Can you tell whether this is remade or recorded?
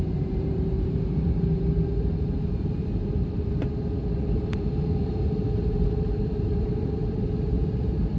remade